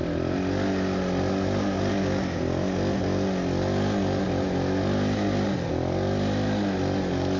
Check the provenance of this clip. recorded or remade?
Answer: recorded